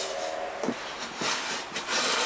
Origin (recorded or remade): recorded